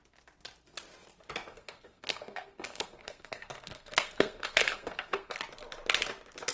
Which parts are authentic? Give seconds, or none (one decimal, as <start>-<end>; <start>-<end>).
0.0-1.5; 5.4-6.5